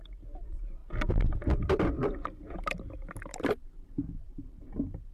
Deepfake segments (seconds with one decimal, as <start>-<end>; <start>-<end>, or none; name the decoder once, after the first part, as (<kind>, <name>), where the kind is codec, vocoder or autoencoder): 0.0-5.1 (vocoder, BigVGAN v2)